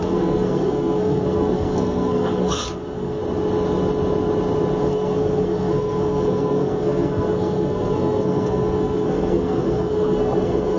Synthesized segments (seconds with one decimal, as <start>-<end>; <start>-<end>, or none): 0.0-3.2; 4.8-10.8